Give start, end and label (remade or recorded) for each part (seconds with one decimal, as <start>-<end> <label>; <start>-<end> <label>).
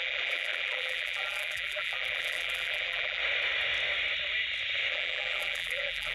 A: 0.0-3.2 remade; 3.2-4.9 recorded; 4.9-6.1 remade